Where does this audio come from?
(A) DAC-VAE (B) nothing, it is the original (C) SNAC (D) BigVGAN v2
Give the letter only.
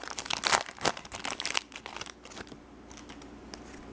B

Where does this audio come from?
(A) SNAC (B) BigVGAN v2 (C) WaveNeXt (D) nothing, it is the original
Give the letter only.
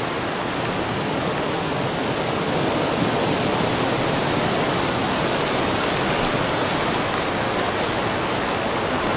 D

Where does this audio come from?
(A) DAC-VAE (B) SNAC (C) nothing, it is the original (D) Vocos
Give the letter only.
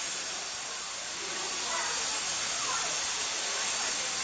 C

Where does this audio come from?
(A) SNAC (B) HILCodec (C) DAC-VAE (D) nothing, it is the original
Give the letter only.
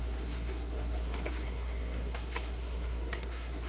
A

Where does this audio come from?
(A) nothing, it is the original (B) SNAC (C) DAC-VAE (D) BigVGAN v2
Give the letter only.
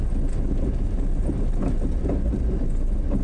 A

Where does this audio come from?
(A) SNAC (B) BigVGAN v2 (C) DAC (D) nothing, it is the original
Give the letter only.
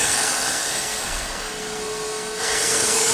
A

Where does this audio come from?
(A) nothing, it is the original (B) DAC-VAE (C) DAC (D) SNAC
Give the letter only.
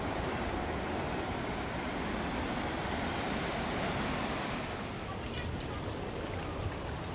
A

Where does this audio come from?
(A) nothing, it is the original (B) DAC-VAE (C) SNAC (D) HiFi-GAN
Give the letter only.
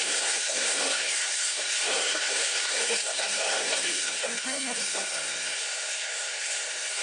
C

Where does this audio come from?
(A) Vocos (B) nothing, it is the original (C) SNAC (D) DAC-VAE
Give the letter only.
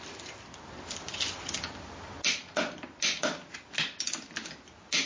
B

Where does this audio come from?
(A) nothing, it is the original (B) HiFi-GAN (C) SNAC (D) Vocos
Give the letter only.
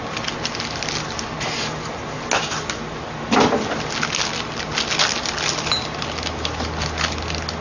A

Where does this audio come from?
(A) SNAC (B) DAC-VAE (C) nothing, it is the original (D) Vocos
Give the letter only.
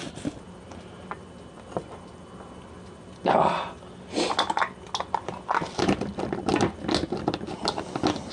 C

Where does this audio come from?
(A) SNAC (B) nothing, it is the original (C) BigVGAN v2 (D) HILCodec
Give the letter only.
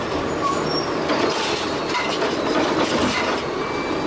B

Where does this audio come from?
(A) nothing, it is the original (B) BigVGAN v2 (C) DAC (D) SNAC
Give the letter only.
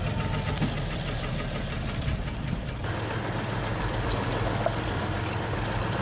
A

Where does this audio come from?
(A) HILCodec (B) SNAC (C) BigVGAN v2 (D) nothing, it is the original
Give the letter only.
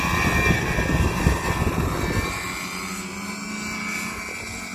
D